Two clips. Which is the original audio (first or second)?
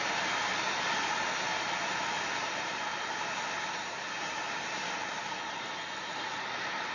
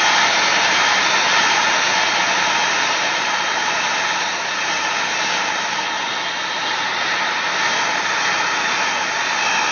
second